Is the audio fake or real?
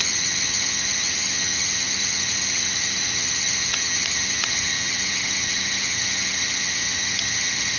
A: fake